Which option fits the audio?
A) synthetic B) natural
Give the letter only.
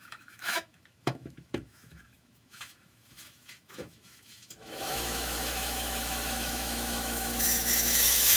A